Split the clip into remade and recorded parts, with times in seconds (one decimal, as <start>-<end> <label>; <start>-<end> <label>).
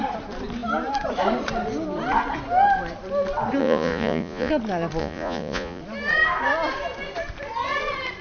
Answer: 0.0-3.6 recorded; 3.6-4.5 remade; 4.5-5.0 recorded; 5.0-5.8 remade; 5.8-8.2 recorded